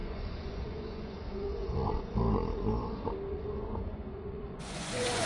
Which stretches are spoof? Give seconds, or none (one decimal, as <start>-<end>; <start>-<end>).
0.0-2.1; 3.3-5.3